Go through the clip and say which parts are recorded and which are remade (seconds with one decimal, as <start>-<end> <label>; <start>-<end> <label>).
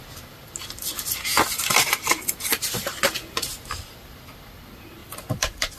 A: 0.0-1.3 recorded; 1.3-2.3 remade; 2.3-5.0 recorded; 5.0-5.8 remade